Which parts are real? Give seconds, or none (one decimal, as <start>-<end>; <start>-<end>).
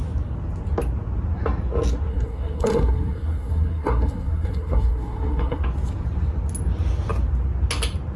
0.0-2.1; 5.6-8.2